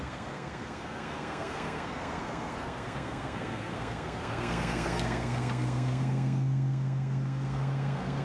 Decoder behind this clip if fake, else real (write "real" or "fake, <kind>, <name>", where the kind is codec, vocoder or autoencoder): fake, codec, SNAC